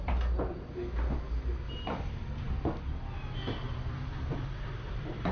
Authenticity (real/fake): real